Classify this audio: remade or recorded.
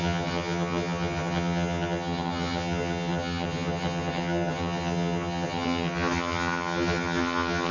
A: remade